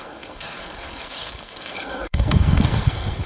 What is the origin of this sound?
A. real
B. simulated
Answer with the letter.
B